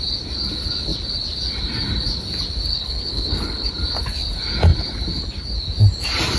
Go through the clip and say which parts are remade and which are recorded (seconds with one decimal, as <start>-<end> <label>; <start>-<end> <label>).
0.0-2.7 recorded; 2.7-3.7 remade; 3.7-6.4 recorded